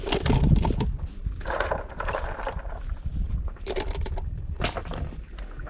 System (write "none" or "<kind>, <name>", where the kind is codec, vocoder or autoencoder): none